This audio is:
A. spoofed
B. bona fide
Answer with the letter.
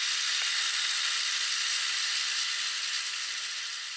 B